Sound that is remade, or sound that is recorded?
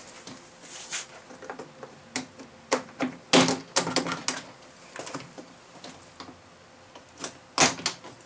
recorded